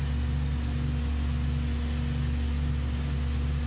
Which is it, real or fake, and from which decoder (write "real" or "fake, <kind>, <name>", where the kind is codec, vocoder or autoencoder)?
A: real